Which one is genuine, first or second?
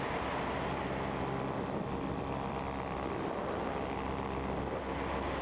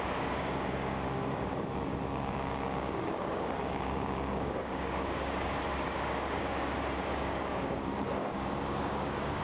first